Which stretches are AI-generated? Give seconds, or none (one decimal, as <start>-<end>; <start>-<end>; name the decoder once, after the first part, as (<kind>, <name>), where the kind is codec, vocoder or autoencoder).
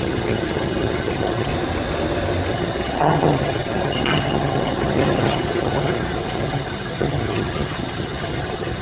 0.0-1.5 (vocoder, HiFi-GAN); 2.5-8.8